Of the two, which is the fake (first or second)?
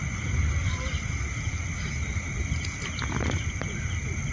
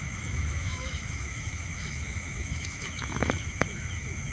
second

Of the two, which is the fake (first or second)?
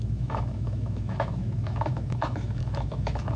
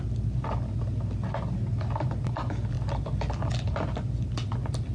first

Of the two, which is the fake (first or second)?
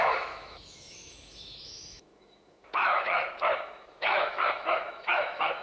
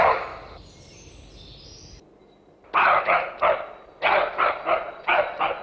first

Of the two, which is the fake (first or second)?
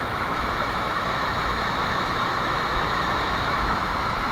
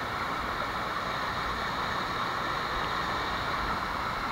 first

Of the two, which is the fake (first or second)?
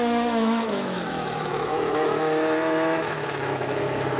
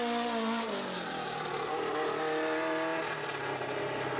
first